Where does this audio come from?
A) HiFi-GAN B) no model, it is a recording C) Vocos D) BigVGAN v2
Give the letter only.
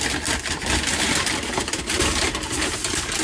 B